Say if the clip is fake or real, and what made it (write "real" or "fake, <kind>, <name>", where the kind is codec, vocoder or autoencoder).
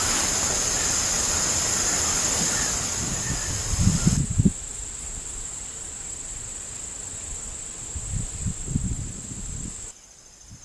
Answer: real